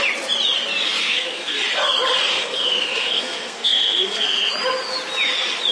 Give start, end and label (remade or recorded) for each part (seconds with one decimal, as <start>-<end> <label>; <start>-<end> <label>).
0.0-1.0 recorded; 1.0-1.6 remade; 1.6-2.3 recorded; 2.3-4.5 remade; 4.5-5.7 recorded

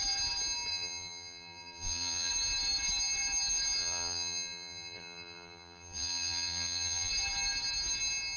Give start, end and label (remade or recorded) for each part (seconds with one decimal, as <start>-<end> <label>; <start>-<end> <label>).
0.0-0.7 recorded; 0.7-2.3 remade; 2.3-3.8 recorded; 3.8-7.1 remade; 7.1-8.4 recorded

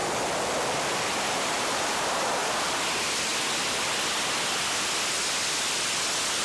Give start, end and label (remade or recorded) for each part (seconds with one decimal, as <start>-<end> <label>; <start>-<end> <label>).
0.0-1.2 recorded; 1.2-2.4 remade; 2.4-6.4 recorded

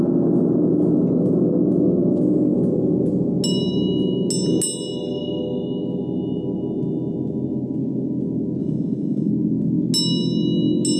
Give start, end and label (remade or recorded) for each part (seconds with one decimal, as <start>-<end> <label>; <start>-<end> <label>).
0.0-8.6 recorded; 8.6-9.3 remade; 9.3-11.0 recorded

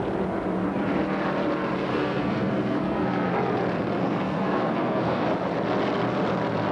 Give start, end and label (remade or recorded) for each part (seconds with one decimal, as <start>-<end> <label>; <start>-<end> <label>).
0.0-1.9 recorded; 1.9-3.3 remade; 3.3-4.0 recorded; 4.0-5.3 remade; 5.3-6.7 recorded

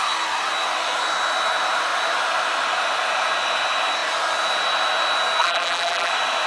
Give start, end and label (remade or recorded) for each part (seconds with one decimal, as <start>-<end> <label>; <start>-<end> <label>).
0.0-5.4 recorded; 5.4-6.1 remade; 6.1-6.5 recorded